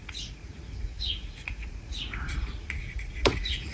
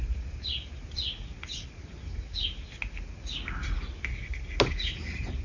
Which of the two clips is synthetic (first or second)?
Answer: first